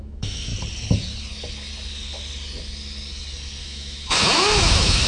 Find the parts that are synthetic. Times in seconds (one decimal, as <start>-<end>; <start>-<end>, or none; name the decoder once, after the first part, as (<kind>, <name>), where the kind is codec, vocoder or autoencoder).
0.0-0.5 (autoencoder, DAC-VAE); 3.6-5.1